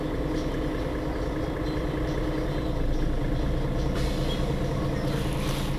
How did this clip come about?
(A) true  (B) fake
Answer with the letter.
A